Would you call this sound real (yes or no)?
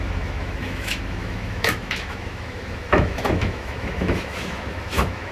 no